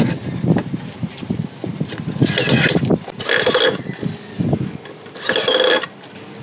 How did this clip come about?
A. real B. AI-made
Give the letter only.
A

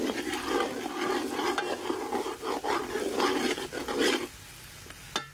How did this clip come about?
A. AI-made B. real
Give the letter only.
B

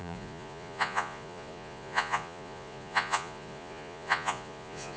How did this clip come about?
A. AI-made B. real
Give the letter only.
A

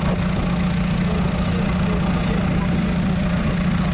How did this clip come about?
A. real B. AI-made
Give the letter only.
A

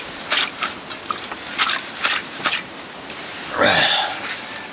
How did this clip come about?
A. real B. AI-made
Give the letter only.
A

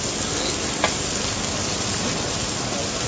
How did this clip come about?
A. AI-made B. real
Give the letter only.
B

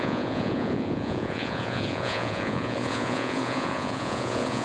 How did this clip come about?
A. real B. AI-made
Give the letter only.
B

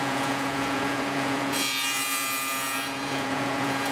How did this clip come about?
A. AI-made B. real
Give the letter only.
A